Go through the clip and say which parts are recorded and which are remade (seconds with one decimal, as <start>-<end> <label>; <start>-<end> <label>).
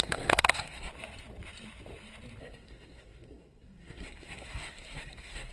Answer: 0.0-0.9 remade; 0.9-2.4 recorded; 2.4-5.5 remade